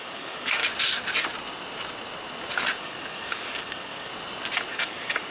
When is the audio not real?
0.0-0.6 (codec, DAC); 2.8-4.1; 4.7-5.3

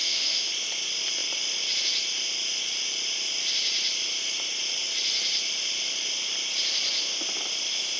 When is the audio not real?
0.0-0.5 (autoencoder, DAC-VAE)

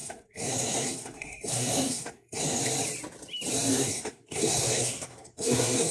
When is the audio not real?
0.0-2.6 (codec, SNAC); 3.7-5.9

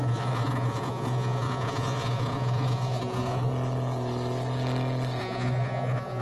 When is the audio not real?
0.0-3.5 (vocoder, Vocos); 5.2-6.2

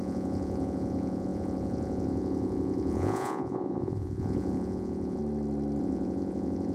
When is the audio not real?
0.0-5.2 (vocoder, Vocos); 5.8-6.7

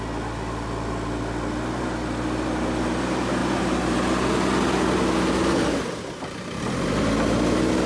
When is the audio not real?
none